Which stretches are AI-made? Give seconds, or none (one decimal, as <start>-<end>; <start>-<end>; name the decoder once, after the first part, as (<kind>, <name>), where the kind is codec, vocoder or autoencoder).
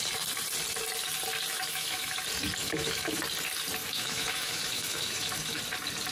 1.5-2.2 (autoencoder, DAC-VAE); 2.6-3.2; 3.8-5.6